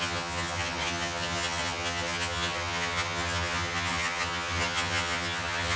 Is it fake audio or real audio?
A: fake